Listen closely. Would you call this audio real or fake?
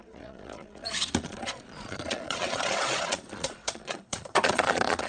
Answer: fake